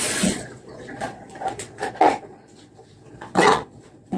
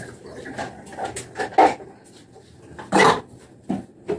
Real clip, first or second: second